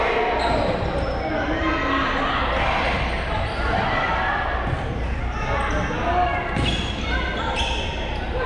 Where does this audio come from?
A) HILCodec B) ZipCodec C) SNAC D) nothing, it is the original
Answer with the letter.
D